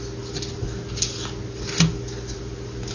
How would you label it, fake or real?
real